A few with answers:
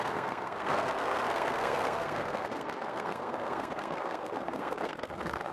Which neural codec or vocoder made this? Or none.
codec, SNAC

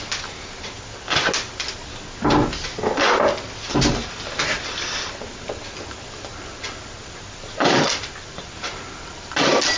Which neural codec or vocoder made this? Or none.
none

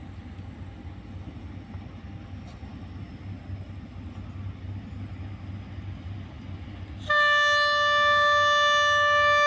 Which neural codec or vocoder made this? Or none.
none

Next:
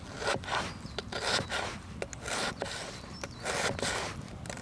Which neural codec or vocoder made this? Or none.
none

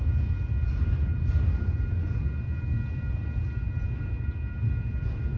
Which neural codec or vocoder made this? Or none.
none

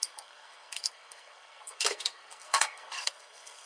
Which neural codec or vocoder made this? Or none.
codec, SNAC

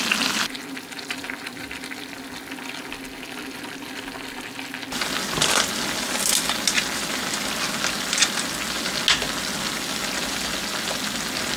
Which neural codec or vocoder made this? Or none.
none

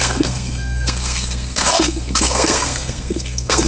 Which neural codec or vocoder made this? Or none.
codec, SNAC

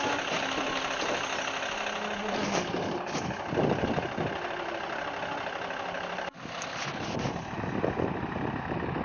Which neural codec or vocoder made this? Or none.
none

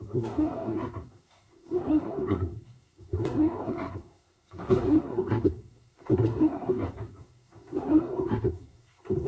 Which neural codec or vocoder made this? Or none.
codec, SNAC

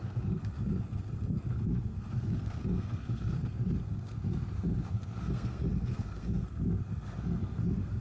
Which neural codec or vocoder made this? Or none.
codec, SNAC